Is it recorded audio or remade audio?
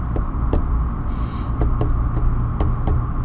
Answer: recorded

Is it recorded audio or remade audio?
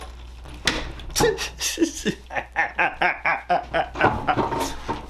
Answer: recorded